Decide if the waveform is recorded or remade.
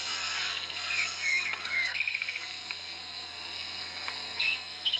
remade